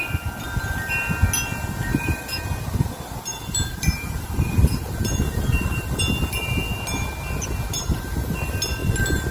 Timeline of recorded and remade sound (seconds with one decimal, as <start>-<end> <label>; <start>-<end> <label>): 0.0-1.9 recorded; 1.9-2.4 remade; 2.4-3.3 recorded; 3.3-6.0 remade; 6.0-9.3 recorded